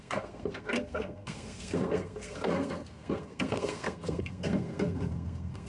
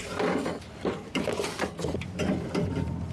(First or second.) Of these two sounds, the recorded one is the second